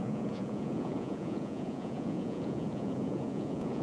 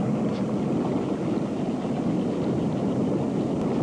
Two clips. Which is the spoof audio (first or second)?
first